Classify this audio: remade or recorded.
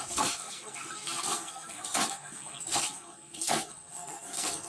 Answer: remade